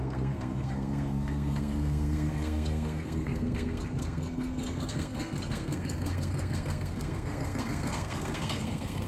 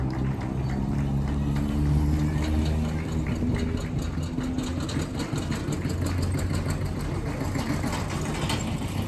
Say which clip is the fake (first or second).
first